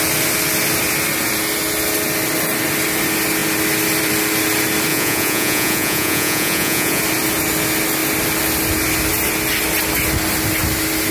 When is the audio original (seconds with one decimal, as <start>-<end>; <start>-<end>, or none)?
0.0-4.9; 7.0-11.1